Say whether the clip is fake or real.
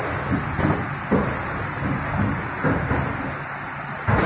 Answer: real